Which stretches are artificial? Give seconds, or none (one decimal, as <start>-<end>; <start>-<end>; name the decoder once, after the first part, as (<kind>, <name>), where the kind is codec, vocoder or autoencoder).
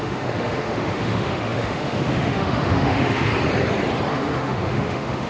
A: 0.0-3.3 (autoencoder, DAC-VAE); 4.1-5.3